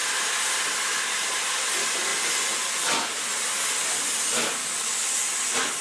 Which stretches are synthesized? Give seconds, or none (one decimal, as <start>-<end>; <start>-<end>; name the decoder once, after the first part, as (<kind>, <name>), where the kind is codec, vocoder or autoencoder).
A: 4.6-5.1 (codec, DAC)